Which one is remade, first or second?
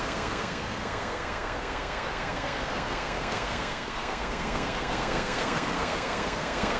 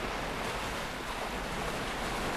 first